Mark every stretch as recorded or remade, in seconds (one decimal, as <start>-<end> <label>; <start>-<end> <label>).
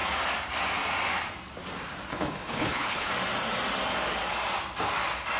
0.0-2.1 recorded; 2.1-3.1 remade; 3.1-5.4 recorded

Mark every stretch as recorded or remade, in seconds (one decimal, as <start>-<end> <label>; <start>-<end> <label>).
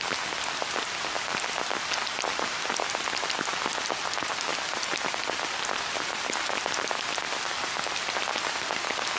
0.0-9.2 recorded